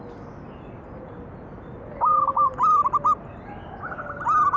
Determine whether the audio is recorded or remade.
recorded